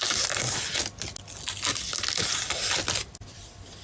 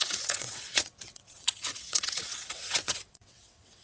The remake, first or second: second